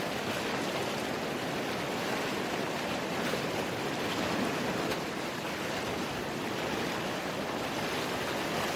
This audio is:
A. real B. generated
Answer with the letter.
A